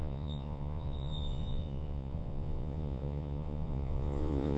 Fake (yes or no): yes